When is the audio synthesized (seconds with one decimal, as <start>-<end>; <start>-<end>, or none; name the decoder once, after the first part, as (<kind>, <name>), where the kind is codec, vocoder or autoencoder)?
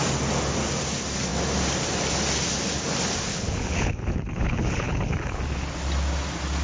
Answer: 3.3-5.4 (codec, HILCodec)